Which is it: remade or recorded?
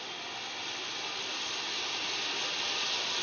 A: recorded